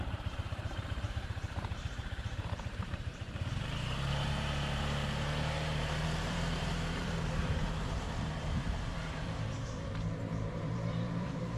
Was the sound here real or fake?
fake